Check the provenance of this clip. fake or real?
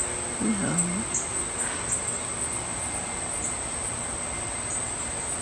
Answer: real